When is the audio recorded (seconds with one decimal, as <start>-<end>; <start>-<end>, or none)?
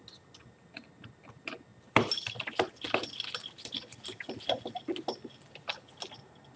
0.0-6.6